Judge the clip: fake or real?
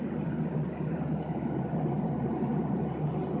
real